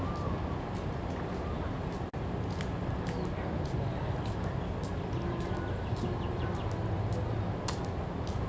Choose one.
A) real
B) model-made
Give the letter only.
A